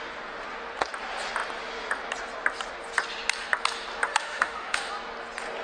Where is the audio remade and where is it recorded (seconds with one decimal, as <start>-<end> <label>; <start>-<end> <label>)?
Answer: 0.0-4.2 recorded; 4.2-4.9 remade; 4.9-5.6 recorded